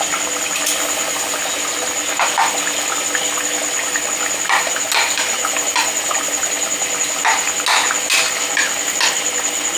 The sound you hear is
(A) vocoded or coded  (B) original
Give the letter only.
B